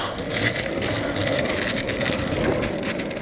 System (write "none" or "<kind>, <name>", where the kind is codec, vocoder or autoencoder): vocoder, BigVGAN v2